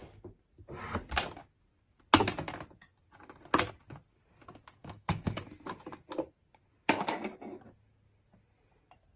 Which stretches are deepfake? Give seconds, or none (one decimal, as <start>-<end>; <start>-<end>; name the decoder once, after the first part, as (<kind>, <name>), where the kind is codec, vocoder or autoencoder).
4.8-5.4 (autoencoder, DAC-VAE)